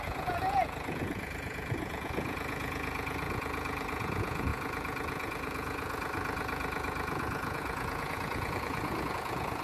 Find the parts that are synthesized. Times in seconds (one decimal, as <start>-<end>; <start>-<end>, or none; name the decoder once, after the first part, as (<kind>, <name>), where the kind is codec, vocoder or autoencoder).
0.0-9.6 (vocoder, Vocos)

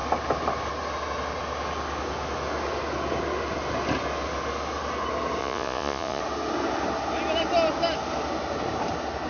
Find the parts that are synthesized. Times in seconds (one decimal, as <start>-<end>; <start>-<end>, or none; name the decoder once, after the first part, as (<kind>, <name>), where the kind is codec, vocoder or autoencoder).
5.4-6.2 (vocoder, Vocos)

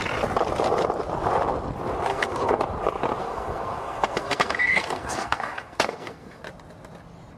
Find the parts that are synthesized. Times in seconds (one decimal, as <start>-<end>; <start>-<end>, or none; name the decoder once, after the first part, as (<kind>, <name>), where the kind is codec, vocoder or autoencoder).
2.1-2.6 (codec, SNAC); 3.2-6.4